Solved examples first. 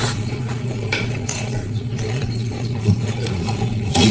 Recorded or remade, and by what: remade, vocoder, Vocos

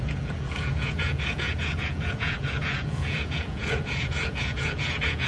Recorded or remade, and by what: remade, vocoder, Vocos